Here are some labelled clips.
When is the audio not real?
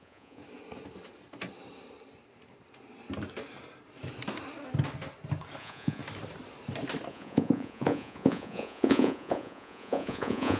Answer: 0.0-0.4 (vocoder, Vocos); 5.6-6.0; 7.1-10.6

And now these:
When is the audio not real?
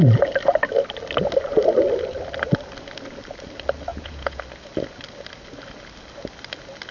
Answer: 3.9-4.4 (vocoder, Vocos)